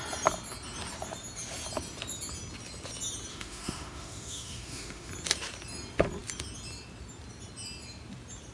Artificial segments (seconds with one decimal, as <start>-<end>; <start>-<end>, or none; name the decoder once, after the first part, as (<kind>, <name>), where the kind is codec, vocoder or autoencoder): 3.3-5.1 (autoencoder, DAC-VAE)